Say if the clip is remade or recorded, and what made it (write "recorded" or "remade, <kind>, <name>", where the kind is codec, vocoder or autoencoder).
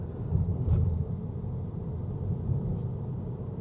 recorded